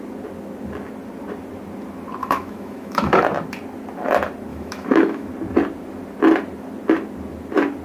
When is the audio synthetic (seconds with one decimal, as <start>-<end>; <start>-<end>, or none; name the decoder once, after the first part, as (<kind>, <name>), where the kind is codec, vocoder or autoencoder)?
2.2-3.2 (autoencoder, DAC-VAE); 4.5-5.3

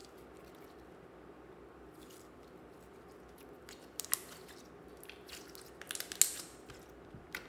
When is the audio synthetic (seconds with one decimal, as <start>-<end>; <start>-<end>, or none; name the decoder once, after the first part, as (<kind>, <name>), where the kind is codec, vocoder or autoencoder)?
none